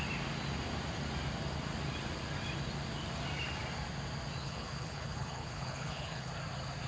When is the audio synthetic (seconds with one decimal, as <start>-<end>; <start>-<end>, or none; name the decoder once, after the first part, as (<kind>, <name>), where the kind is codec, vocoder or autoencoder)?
4.4-6.3 (codec, HILCodec)